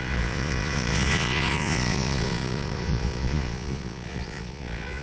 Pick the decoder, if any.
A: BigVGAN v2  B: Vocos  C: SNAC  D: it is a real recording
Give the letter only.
B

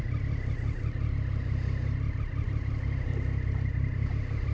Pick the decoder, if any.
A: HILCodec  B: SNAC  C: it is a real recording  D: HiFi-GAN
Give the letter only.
C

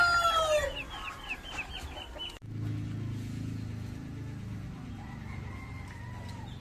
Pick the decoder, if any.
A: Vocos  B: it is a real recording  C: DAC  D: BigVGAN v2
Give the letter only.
B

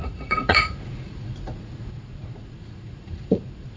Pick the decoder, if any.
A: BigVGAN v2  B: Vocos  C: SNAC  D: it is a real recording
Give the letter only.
B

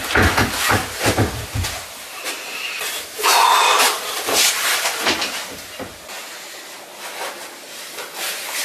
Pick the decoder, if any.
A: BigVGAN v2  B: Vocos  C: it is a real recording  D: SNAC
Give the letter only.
C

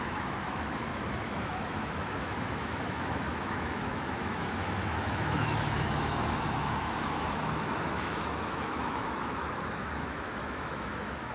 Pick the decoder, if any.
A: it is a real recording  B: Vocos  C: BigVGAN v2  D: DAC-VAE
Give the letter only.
D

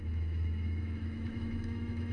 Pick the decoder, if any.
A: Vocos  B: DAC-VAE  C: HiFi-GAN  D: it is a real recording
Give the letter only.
B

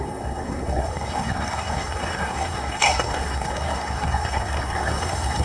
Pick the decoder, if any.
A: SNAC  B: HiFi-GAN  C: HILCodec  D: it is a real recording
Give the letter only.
A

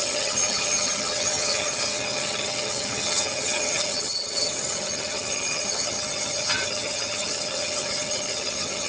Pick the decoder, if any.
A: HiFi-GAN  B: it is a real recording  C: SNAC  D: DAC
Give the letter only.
A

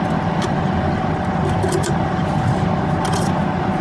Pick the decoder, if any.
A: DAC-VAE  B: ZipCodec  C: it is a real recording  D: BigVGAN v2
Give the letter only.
C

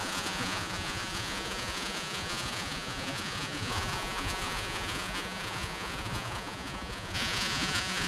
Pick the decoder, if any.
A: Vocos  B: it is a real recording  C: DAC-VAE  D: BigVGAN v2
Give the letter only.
A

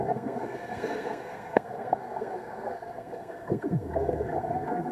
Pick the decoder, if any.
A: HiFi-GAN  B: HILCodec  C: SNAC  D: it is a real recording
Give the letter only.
C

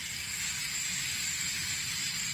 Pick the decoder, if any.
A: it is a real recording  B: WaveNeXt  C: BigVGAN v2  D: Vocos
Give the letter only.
A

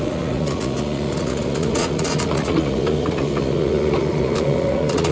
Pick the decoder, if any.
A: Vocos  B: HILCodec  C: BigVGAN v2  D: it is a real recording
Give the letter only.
A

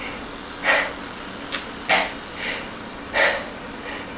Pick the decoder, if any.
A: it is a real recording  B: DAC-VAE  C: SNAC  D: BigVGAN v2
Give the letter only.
A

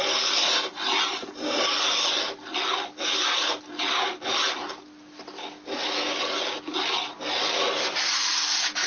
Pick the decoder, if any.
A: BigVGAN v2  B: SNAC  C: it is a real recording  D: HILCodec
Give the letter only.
C